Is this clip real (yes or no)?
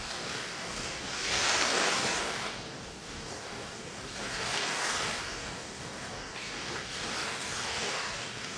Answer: no